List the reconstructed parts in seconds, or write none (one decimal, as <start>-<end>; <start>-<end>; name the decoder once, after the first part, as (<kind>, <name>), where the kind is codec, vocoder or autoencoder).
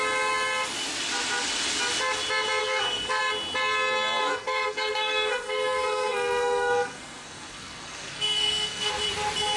2.6-3.2 (codec, SNAC); 4.2-8.9